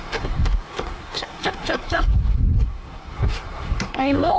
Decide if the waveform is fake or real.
fake